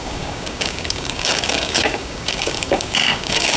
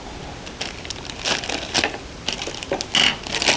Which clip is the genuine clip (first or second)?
second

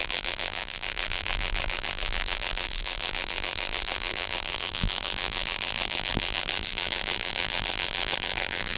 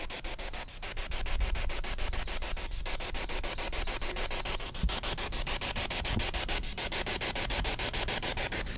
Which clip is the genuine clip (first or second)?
second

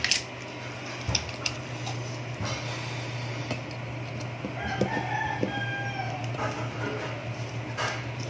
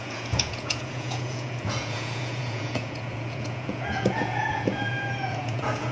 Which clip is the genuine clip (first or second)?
first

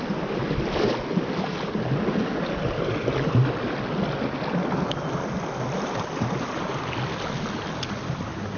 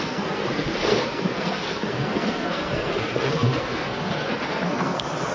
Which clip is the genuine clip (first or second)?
first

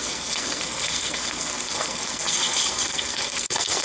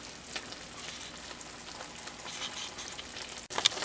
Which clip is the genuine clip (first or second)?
second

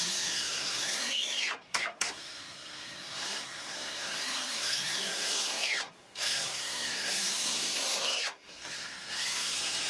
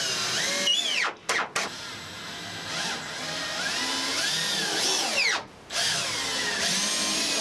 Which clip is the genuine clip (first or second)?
second